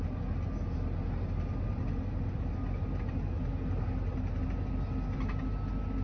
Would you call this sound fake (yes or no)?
no